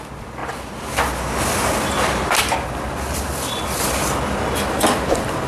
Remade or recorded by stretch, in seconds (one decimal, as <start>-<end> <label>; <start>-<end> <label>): 0.0-5.5 recorded